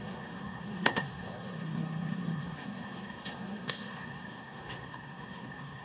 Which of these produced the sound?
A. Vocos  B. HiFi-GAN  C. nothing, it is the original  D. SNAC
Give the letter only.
D